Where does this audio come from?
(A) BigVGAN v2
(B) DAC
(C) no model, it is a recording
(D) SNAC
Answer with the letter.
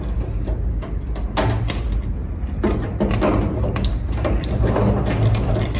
C